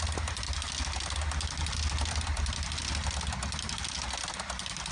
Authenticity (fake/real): real